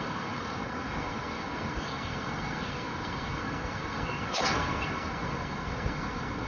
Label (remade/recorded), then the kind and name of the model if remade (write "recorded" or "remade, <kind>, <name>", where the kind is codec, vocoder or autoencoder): remade, codec, SNAC